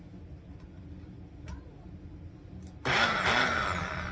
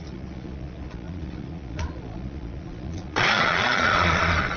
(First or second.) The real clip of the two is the first